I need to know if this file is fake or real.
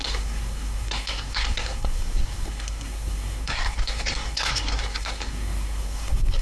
fake